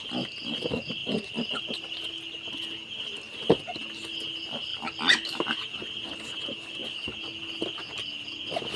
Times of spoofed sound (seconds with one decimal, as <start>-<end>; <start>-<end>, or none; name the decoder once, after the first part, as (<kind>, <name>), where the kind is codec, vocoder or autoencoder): 1.0-1.6 (vocoder, BigVGAN v2); 4.7-5.9